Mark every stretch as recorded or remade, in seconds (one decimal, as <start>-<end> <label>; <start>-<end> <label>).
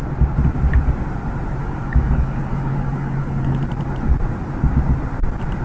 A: 0.0-1.6 recorded; 1.6-3.6 remade; 3.6-5.6 recorded